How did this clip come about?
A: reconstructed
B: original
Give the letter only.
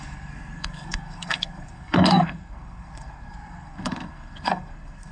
A